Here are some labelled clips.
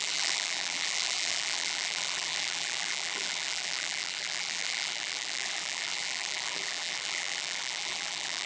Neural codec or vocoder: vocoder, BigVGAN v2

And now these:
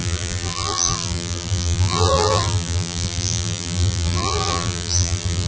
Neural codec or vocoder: vocoder, BigVGAN v2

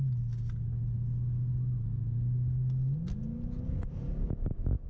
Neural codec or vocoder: none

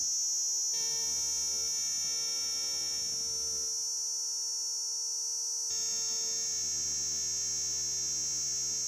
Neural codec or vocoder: none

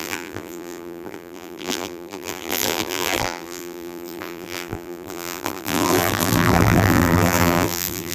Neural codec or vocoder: vocoder, BigVGAN v2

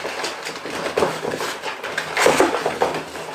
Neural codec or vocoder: none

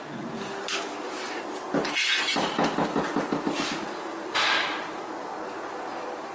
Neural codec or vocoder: none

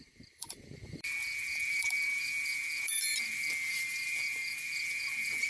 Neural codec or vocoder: vocoder, BigVGAN v2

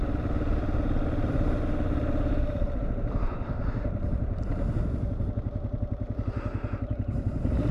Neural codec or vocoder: vocoder, BigVGAN v2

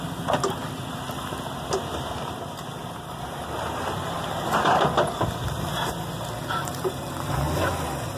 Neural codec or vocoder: none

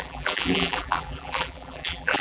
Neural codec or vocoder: vocoder, BigVGAN v2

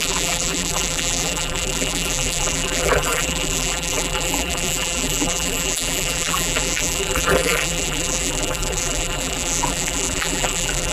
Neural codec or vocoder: vocoder, BigVGAN v2